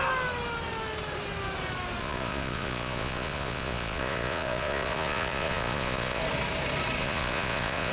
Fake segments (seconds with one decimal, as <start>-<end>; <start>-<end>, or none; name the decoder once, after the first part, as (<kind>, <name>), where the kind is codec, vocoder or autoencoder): 2.0-6.2 (vocoder, Vocos); 7.0-7.9